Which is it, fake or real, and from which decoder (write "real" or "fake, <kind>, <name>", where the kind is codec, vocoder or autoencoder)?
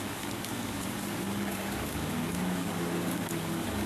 fake, codec, DAC